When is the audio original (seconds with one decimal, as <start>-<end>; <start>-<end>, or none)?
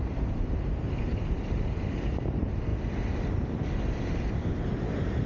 2.7-4.5